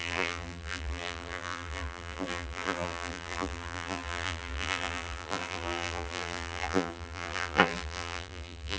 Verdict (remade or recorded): remade